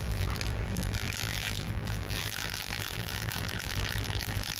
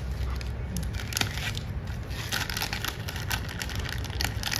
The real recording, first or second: second